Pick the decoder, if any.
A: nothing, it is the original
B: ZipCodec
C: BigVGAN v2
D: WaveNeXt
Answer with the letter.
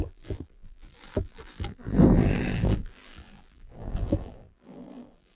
C